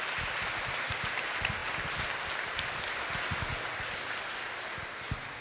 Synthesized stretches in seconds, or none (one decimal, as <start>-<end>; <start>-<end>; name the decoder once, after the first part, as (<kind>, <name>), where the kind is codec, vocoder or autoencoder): none